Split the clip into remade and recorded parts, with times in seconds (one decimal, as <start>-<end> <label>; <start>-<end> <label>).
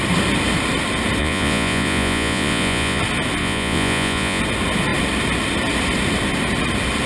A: 0.0-1.2 recorded; 1.2-3.0 remade; 3.0-3.4 recorded; 3.4-4.4 remade; 4.4-7.1 recorded